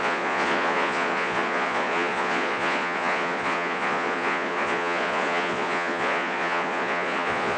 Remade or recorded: remade